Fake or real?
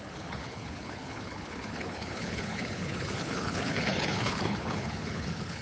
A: fake